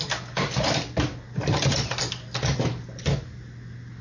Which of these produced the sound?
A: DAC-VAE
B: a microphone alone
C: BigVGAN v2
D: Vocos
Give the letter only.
B